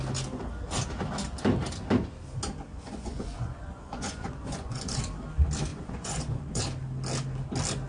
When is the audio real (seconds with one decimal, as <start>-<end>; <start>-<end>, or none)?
0.0-2.7; 5.0-5.7; 6.6-7.9